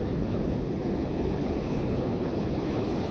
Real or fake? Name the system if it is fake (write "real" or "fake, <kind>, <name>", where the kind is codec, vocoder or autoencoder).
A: fake, codec, HILCodec